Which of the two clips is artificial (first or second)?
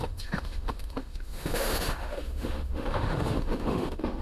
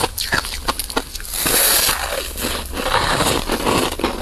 first